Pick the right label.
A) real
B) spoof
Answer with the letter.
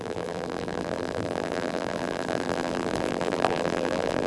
B